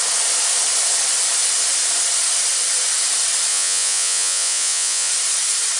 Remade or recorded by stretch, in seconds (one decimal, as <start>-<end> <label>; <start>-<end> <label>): 0.0-3.5 recorded; 3.5-5.1 remade; 5.1-5.8 recorded